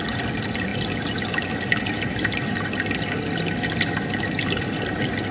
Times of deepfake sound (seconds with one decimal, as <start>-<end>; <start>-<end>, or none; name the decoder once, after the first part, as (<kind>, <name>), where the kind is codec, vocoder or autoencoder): none